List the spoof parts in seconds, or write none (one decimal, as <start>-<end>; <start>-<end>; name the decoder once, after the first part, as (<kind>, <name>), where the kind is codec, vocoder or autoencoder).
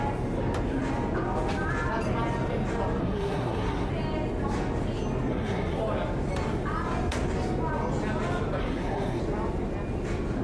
3.0-3.9 (codec, SNAC); 5.3-5.8; 8.6-9.2